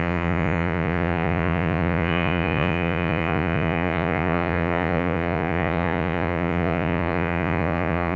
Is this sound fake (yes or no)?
yes